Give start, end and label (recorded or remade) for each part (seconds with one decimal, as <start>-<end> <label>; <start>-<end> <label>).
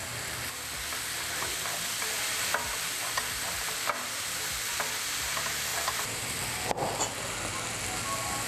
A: 0.0-5.7 recorded; 5.7-6.4 remade; 6.4-8.5 recorded